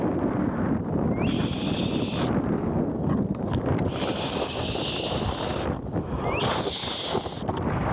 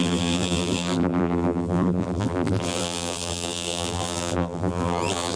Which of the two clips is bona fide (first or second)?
first